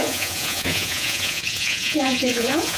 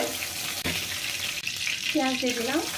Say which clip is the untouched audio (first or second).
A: second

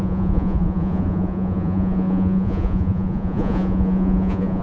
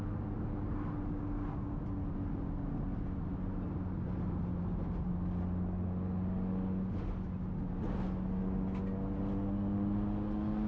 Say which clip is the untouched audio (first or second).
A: second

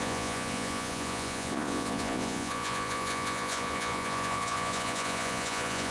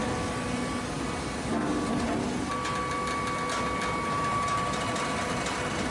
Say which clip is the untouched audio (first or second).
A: second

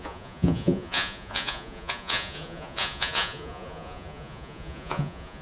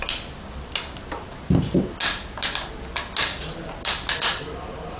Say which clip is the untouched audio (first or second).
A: second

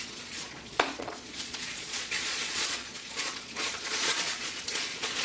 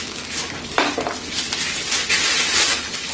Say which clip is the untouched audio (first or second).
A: second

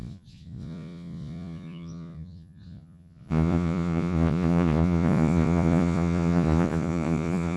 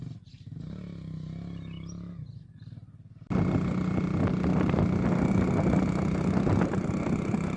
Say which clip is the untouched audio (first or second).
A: second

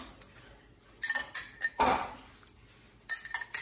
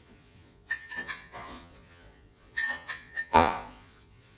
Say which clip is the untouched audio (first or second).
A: first